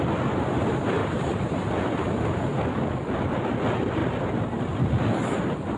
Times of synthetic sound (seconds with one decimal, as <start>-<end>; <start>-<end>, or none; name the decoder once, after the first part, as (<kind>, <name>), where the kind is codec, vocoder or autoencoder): 1.0-1.7 (vocoder, BigVGAN v2)